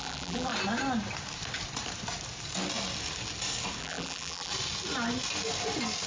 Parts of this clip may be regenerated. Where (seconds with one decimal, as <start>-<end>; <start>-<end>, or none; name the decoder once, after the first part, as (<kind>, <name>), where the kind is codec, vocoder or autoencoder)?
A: 0.0-0.5 (vocoder, BigVGAN v2); 3.8-4.5